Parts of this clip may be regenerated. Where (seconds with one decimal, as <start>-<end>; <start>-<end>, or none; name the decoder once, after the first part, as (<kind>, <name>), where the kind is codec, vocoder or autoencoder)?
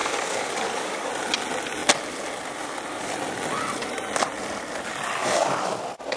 0.0-1.1 (codec, DAC); 5.2-5.8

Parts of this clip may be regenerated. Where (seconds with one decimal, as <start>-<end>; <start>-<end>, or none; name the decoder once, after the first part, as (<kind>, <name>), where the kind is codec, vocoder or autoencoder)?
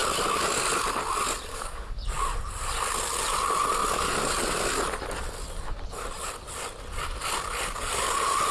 1.5-2.1 (codec, DAC)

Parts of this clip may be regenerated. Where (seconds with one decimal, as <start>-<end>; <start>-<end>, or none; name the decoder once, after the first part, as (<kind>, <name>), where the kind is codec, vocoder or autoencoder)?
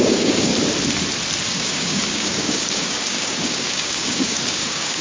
0.0-0.5 (codec, DAC); 1.4-5.0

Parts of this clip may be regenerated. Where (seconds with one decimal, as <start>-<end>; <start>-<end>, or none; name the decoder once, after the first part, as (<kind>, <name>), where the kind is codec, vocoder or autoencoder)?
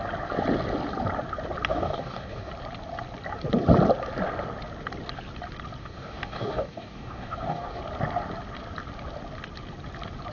1.7-2.5 (codec, DAC); 5.8-7.8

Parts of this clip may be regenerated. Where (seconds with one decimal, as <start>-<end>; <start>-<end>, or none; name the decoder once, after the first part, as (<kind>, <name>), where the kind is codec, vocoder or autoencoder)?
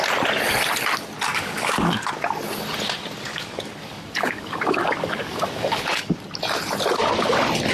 1.3-2.1 (codec, DAC); 3.3-6.2